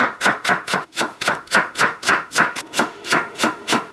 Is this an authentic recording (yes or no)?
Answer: no